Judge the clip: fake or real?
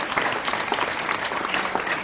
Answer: real